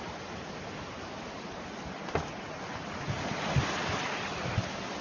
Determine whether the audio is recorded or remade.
recorded